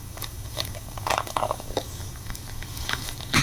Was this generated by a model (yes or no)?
yes